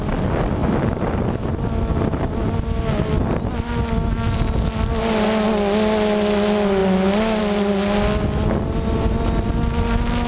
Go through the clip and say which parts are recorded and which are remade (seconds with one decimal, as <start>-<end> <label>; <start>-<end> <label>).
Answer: 0.0-10.3 recorded